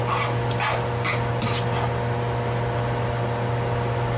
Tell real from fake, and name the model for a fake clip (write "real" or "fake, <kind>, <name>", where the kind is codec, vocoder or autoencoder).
real